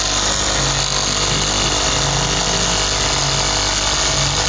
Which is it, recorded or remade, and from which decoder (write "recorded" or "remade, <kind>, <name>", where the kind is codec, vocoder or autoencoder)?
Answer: recorded